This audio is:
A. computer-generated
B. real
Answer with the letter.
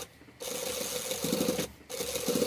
B